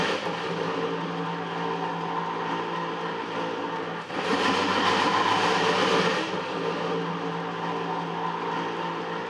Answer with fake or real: real